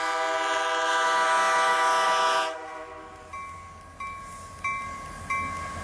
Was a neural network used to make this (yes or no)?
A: no